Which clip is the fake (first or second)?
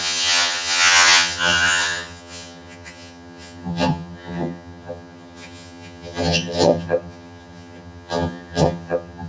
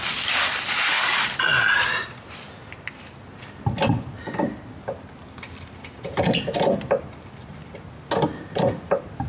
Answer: first